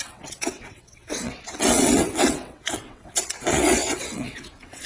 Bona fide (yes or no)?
no